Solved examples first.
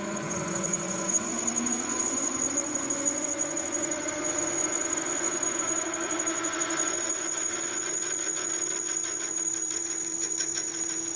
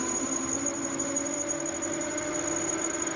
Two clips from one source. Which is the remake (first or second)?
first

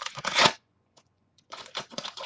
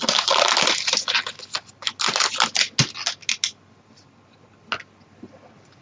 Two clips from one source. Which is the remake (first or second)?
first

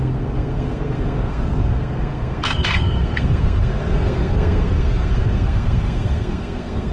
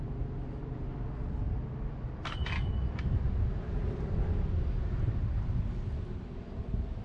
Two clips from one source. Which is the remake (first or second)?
first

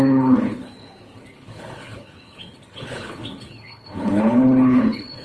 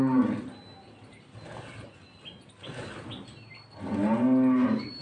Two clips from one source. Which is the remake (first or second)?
first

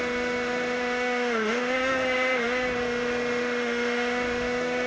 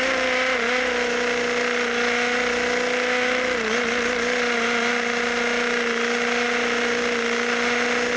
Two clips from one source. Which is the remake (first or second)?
first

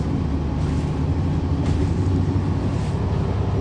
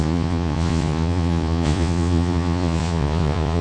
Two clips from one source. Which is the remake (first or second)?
second